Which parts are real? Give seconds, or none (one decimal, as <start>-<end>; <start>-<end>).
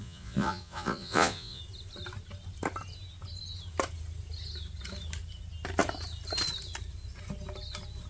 1.6-8.1